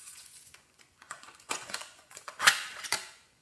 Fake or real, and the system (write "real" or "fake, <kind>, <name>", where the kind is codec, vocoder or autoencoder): fake, vocoder, Vocos